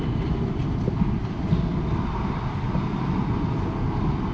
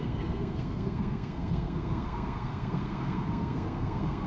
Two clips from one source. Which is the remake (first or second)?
second